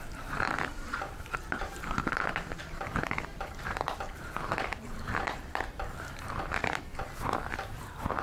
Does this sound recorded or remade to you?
remade